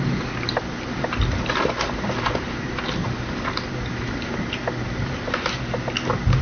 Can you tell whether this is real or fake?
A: real